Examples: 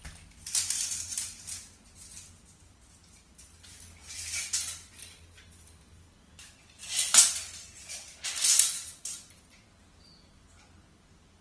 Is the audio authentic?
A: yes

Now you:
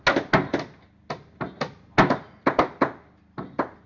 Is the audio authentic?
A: yes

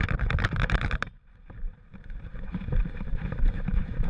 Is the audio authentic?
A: no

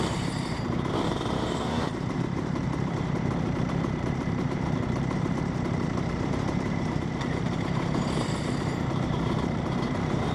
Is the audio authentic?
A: no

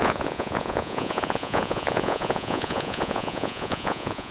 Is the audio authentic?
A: no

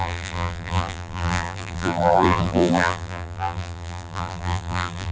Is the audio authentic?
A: no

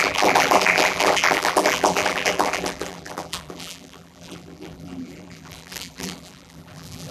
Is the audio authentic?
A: no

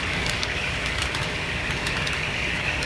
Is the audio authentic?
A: no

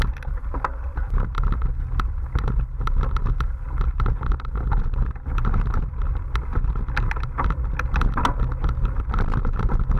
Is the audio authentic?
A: yes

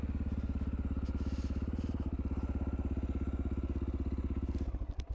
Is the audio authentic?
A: yes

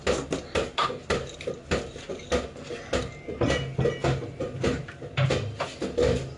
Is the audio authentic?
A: yes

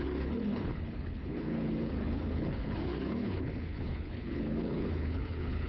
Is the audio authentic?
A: no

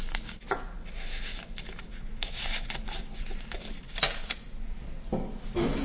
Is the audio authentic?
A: yes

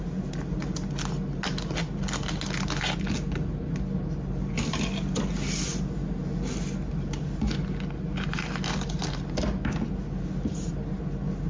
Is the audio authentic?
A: yes